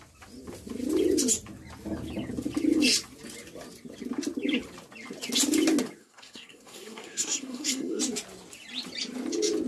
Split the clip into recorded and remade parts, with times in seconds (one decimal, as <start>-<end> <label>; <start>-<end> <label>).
0.0-6.0 recorded; 6.0-8.0 remade; 8.0-9.7 recorded